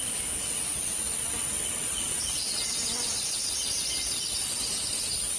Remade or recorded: recorded